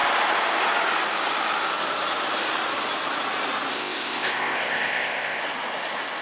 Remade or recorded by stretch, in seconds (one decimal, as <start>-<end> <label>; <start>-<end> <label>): 0.0-3.7 recorded; 3.7-5.4 remade; 5.4-6.2 recorded